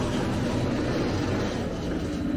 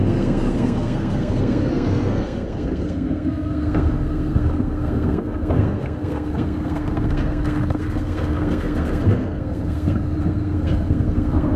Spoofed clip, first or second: second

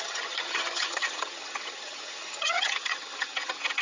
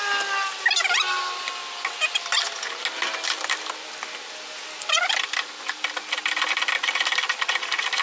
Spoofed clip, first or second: first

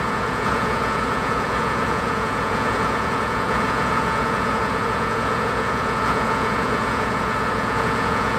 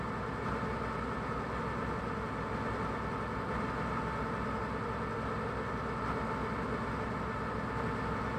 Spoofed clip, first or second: first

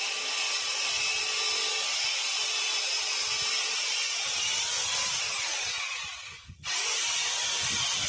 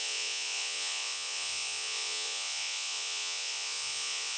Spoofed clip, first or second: second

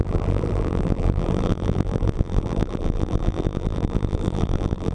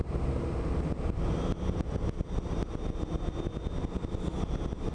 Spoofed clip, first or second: first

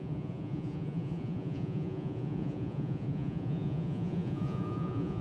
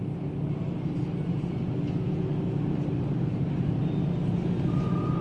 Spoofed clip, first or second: first